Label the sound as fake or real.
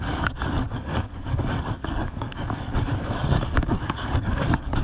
fake